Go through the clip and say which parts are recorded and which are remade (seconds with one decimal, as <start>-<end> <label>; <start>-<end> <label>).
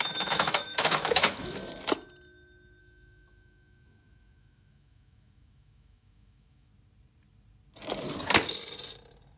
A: 0.0-1.6 remade; 1.6-2.8 recorded; 2.8-6.7 remade; 6.7-9.4 recorded